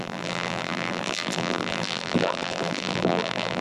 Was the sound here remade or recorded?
remade